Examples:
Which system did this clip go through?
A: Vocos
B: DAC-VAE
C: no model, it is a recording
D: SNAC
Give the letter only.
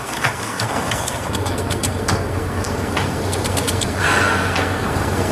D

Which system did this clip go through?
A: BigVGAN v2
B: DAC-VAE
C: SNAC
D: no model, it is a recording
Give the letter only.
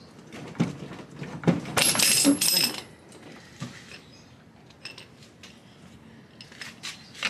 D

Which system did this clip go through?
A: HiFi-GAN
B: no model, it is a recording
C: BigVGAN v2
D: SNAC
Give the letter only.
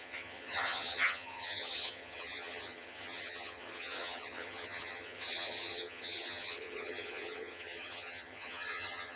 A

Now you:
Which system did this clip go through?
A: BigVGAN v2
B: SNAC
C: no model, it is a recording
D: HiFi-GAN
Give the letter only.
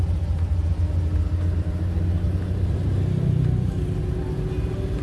C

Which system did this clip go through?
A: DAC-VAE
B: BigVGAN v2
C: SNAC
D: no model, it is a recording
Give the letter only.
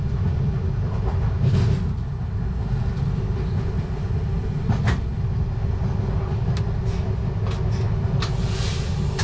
D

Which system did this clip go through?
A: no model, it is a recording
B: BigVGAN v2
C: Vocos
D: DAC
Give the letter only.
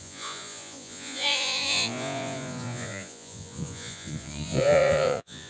C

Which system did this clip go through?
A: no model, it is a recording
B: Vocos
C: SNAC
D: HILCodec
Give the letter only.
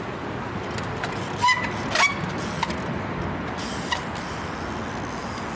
A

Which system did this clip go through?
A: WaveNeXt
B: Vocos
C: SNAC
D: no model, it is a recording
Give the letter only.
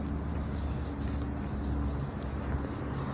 D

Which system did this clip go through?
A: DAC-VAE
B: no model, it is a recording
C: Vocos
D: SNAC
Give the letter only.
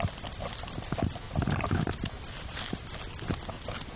B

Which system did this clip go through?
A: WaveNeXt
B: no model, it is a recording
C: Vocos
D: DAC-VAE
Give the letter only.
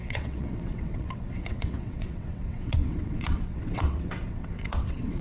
A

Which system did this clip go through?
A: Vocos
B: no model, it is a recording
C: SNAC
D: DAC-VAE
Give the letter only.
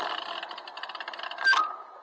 B